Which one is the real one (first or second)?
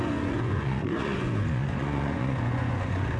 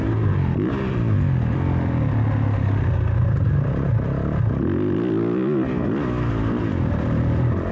second